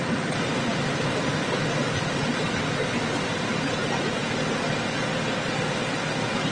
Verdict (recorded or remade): recorded